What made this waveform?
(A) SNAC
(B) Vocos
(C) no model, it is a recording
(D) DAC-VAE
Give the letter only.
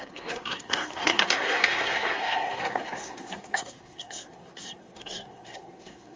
A